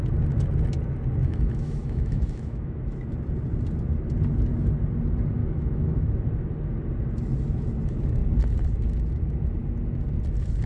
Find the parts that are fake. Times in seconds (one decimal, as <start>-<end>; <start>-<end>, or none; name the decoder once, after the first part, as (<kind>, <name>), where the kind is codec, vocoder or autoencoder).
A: 1.2-3.1 (autoencoder, DAC-VAE); 5.4-6.1